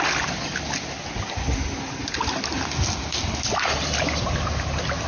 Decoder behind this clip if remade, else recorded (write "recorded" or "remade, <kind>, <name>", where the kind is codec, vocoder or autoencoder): recorded